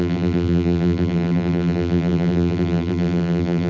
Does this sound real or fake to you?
fake